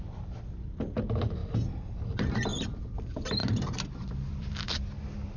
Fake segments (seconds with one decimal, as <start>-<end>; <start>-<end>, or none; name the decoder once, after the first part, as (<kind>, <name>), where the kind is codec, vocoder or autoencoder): 2.5-3.0 (vocoder, BigVGAN v2); 3.4-4.7